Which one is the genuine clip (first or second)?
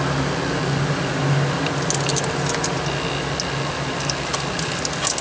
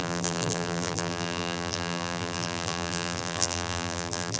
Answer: first